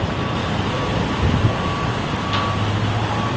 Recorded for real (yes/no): yes